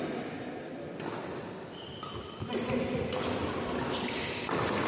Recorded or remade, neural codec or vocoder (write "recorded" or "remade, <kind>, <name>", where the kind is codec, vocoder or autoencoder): recorded